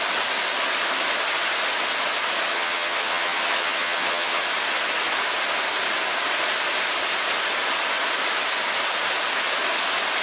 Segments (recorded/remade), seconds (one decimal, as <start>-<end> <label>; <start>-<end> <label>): 0.0-2.5 recorded; 2.5-4.4 remade; 4.4-10.2 recorded